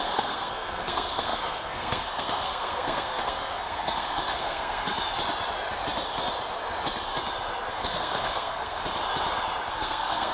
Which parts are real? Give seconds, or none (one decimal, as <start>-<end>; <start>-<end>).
4.9-7.7; 8.8-9.7